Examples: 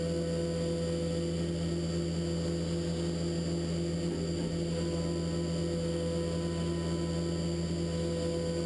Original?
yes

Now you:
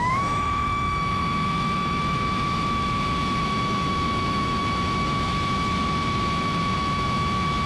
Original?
no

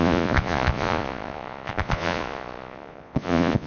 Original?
no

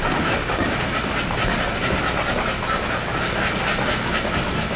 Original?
yes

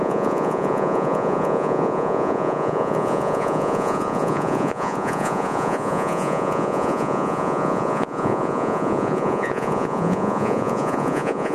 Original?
no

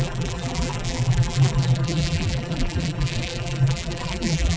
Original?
no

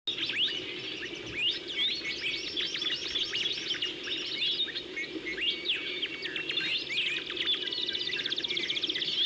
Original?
yes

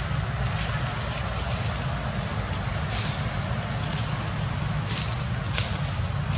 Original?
yes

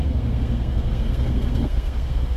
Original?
no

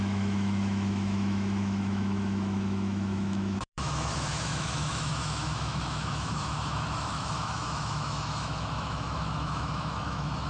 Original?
no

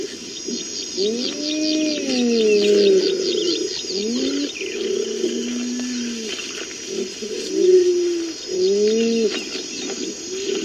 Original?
yes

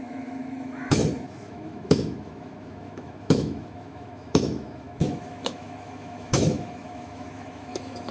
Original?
no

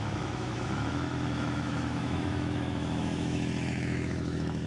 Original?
no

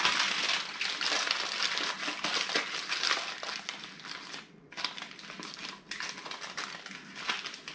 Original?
yes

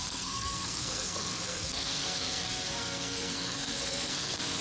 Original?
no